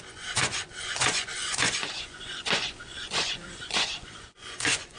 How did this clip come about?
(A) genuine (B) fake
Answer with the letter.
B